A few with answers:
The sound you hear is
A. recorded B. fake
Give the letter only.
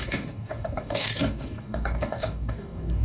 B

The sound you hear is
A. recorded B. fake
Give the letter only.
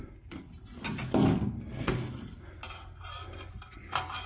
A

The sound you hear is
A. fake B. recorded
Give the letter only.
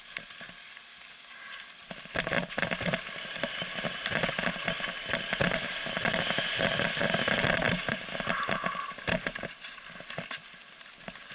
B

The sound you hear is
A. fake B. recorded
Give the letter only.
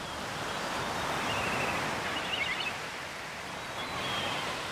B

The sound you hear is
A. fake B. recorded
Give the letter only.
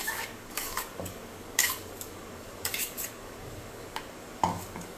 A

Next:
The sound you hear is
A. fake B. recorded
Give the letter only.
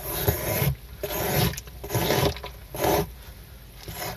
B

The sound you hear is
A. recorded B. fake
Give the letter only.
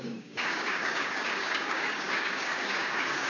B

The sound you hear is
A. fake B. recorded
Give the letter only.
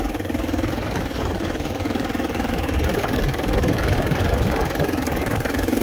A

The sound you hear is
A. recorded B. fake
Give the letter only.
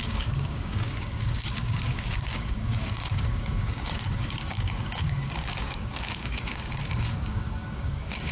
B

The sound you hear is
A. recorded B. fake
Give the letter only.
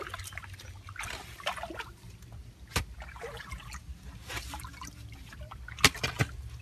A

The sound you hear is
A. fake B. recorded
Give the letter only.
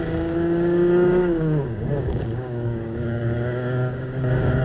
A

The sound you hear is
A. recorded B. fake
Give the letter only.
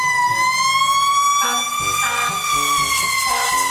A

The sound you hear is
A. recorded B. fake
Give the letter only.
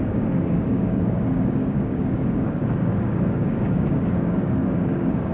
B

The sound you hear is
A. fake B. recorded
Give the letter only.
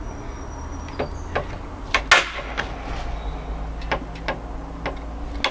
B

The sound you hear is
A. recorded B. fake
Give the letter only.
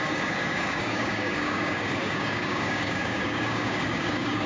B